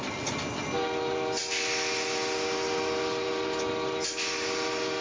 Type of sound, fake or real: real